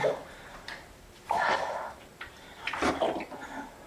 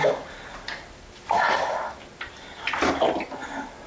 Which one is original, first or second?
second